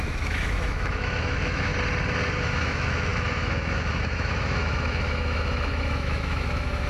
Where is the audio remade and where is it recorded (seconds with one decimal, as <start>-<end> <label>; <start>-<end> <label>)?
0.0-1.7 remade; 1.7-2.4 recorded; 2.4-6.9 remade